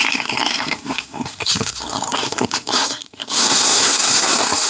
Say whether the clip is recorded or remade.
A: remade